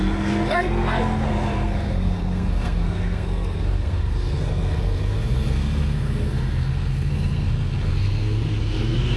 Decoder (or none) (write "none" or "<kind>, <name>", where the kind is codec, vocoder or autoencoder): codec, SNAC